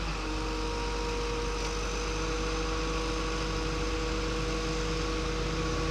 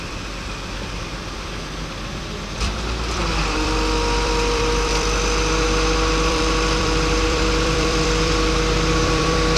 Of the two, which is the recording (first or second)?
first